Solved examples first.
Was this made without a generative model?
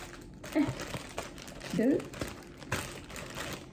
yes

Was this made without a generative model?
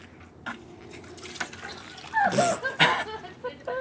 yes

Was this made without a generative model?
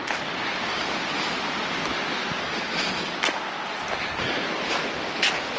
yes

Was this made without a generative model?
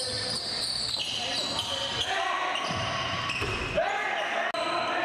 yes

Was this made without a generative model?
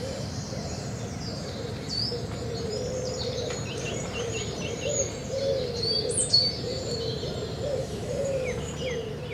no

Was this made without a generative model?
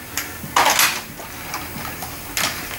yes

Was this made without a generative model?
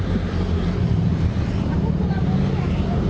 no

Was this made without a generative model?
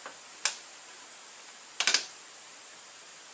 yes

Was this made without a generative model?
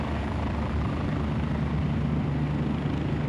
yes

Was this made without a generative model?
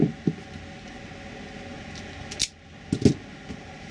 yes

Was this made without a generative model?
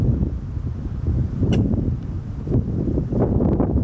no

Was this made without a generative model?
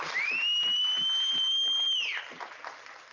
yes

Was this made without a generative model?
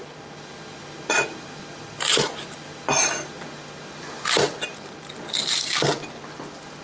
yes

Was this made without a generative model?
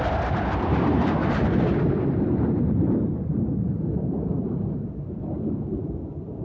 no